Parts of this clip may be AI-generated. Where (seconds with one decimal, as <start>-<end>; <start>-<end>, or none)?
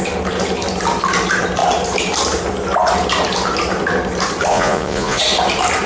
4.5-5.2